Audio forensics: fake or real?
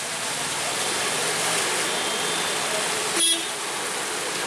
real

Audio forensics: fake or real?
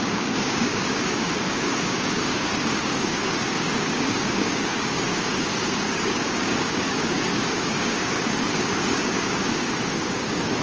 fake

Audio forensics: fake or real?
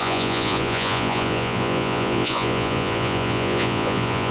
fake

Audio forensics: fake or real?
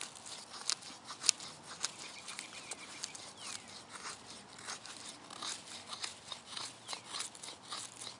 real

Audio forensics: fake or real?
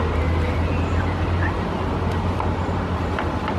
real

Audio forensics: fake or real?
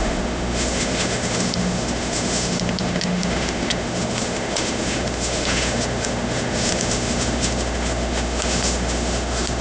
fake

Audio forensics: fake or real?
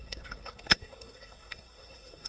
fake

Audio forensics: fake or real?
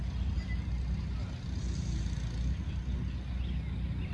real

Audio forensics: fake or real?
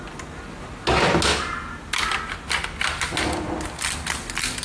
real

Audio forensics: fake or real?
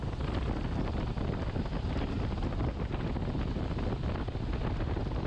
real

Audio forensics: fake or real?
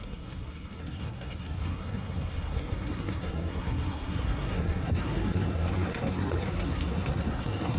fake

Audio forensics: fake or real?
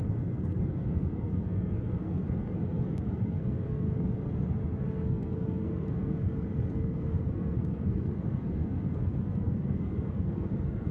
fake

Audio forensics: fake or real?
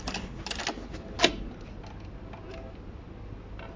real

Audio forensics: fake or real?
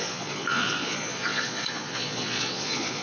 fake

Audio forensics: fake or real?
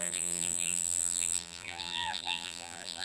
fake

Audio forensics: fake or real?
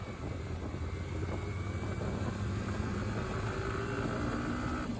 real